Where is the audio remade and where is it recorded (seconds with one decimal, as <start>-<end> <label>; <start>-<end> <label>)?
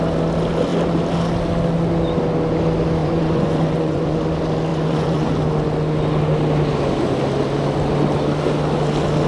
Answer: 0.0-3.0 recorded; 3.0-4.2 remade; 4.2-4.7 recorded; 4.7-5.3 remade; 5.3-9.3 recorded